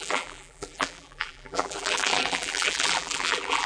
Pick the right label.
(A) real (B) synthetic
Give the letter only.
B